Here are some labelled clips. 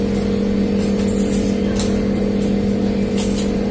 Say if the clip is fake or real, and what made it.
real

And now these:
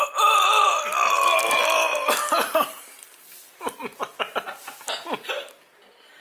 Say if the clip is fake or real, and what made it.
real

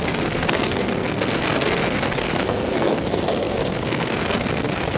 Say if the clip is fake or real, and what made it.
fake, codec, SNAC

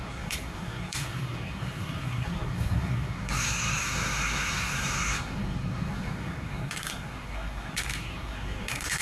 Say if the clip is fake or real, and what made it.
fake, codec, SNAC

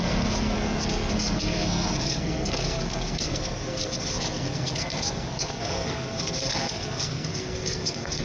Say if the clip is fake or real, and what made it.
fake, codec, SNAC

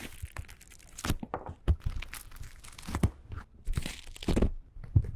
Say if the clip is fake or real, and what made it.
real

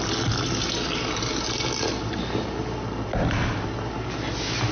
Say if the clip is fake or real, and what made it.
real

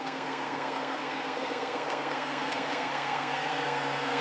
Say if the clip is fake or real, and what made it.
fake, codec, SNAC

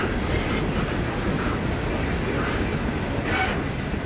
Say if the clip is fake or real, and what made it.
real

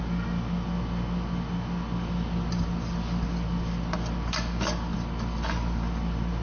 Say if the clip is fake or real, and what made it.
real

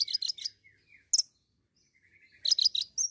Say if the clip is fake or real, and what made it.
real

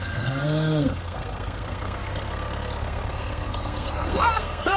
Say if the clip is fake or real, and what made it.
fake, codec, SNAC